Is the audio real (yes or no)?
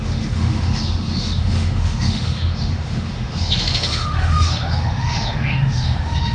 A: no